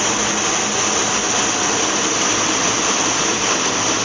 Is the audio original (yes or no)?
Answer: yes